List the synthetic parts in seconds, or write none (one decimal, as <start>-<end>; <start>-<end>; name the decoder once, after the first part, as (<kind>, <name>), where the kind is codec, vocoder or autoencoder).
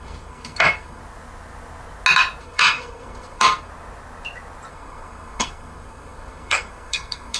0.0-1.0 (codec, SNAC); 2.4-3.7; 4.7-7.4